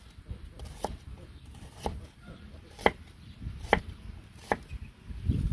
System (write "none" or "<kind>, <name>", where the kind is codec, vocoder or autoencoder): vocoder, BigVGAN v2